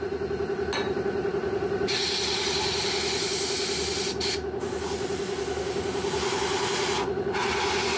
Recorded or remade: recorded